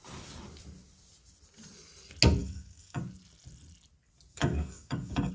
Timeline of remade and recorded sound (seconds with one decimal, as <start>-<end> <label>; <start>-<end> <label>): 0.0-2.4 recorded; 2.4-3.0 remade; 3.0-4.3 recorded; 4.3-5.3 remade